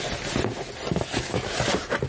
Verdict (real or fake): real